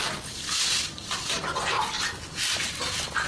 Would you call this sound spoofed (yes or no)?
no